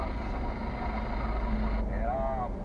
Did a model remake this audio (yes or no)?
no